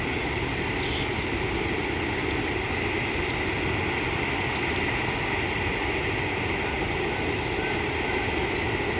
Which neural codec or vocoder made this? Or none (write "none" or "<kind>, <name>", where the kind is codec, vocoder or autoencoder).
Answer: none